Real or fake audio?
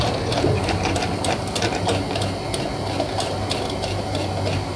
real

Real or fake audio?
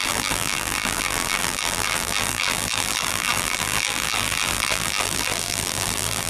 fake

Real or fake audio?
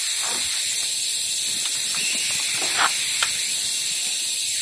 fake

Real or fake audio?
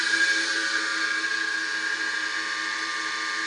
fake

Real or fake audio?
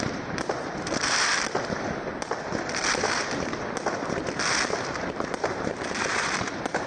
fake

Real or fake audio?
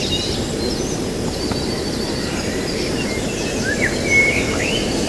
fake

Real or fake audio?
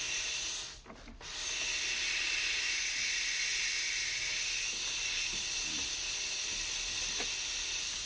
real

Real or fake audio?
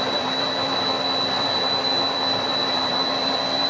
fake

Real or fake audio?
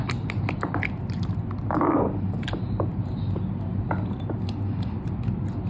real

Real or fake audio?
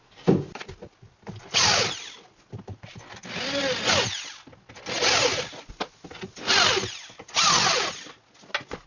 real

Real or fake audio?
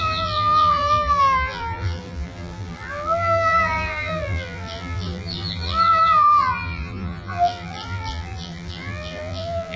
fake